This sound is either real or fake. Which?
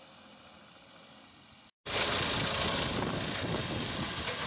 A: real